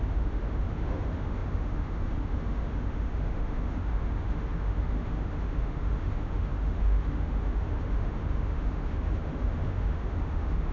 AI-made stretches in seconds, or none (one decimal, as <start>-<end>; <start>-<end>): 0.0-10.7

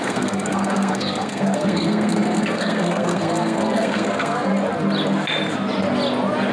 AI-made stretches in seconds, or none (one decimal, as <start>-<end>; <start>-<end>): 0.0-4.5

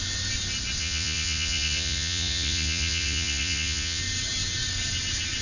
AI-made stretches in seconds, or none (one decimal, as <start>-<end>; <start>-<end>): 0.8-4.0